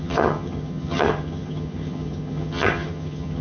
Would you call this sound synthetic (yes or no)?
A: yes